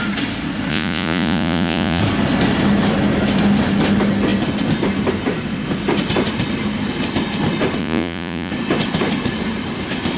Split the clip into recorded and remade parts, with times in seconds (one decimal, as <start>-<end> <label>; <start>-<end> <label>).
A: 0.0-0.7 recorded; 0.7-2.0 remade; 2.0-7.8 recorded; 7.8-8.5 remade; 8.5-10.2 recorded